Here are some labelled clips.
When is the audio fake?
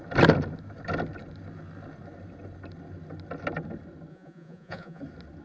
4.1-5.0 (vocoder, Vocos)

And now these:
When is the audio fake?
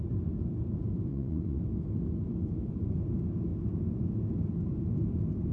1.1-1.6 (vocoder, Vocos)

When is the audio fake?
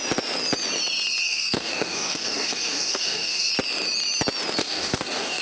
1.2-3.5 (codec, DAC); 4.6-5.4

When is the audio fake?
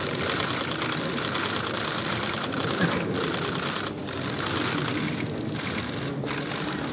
none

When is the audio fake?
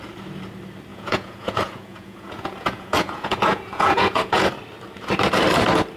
0.9-4.5 (vocoder, Vocos)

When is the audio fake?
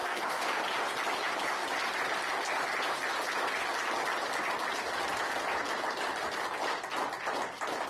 0.0-0.6 (codec, SNAC)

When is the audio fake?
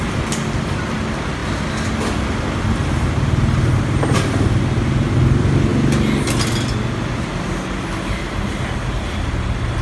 none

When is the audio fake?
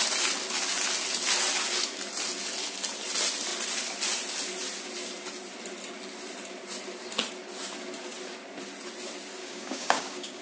9.4-10.4 (codec, DAC)